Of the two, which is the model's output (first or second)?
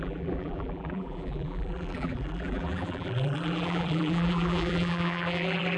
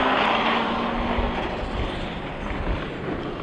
first